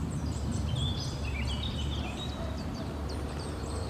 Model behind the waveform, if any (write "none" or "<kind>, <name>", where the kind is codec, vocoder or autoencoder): vocoder, BigVGAN v2